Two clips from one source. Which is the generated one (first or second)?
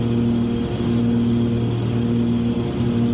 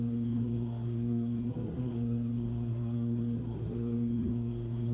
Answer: second